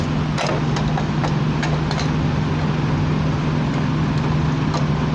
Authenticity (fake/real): real